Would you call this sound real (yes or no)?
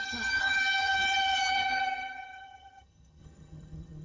no